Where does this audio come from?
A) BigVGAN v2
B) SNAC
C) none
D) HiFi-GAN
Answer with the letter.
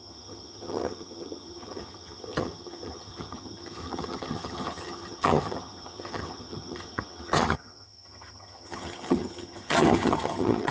D